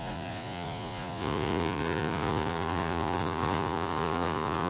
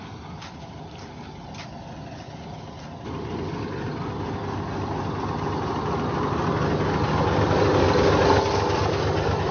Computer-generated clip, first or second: first